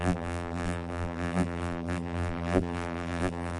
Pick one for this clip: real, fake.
fake